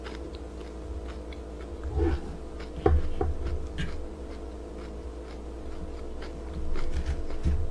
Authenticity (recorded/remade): recorded